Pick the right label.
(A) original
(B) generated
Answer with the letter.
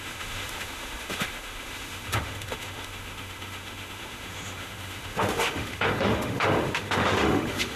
B